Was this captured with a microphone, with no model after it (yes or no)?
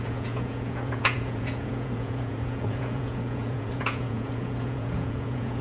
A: no